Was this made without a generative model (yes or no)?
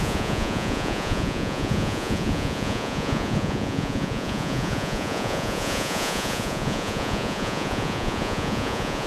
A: no